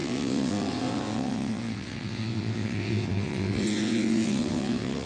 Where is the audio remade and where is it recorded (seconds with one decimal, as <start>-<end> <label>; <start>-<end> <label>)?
0.0-5.1 remade